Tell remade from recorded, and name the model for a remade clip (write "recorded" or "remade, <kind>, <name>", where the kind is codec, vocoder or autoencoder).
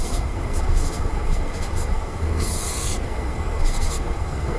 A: remade, codec, SNAC